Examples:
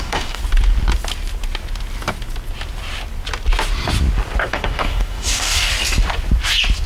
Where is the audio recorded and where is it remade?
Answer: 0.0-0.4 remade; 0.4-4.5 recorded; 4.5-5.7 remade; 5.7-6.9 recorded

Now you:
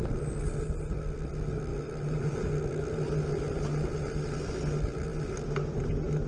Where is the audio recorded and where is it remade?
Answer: 0.0-6.3 recorded

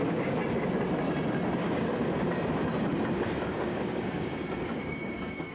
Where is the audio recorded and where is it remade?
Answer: 0.0-0.4 remade; 0.4-1.6 recorded; 1.6-2.0 remade; 2.0-3.2 recorded; 3.2-5.5 remade

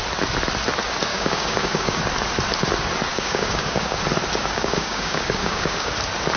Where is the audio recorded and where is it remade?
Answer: 0.0-1.1 recorded; 1.1-2.0 remade; 2.0-3.1 recorded; 3.1-4.0 remade; 4.0-4.4 recorded; 4.4-5.9 remade; 5.9-6.4 recorded

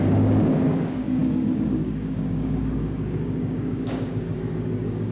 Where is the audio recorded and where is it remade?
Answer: 0.0-5.1 remade

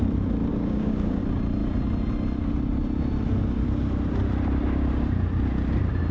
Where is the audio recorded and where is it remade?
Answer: 0.0-0.5 recorded; 0.5-1.2 remade; 1.2-6.1 recorded

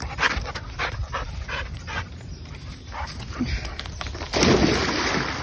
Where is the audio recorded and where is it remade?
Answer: 0.0-5.4 recorded

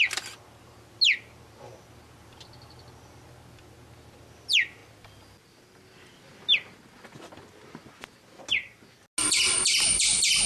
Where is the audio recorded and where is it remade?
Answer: 0.0-10.5 recorded